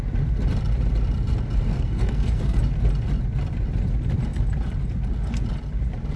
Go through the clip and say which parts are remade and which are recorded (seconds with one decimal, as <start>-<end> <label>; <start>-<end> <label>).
0.0-1.7 recorded; 1.7-2.6 remade; 2.6-6.2 recorded